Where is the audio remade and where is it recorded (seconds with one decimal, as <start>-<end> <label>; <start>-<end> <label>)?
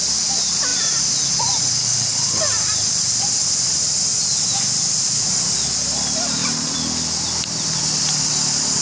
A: 0.0-1.8 recorded; 1.8-2.4 remade; 2.4-8.8 recorded